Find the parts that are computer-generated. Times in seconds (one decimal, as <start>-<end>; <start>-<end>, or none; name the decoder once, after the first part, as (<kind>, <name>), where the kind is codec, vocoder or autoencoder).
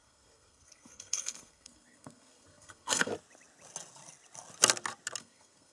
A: 0.0-3.1 (codec, SNAC); 5.2-5.7